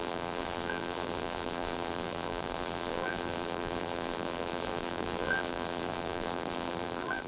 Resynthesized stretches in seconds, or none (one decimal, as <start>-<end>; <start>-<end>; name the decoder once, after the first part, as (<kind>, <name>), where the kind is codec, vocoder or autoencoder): 0.0-7.3 (vocoder, BigVGAN v2)